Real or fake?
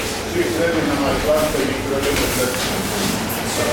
fake